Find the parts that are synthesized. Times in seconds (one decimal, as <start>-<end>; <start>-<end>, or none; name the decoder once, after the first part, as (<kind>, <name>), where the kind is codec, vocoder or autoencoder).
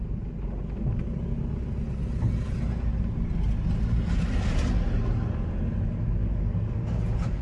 6.2-6.8 (codec, DAC)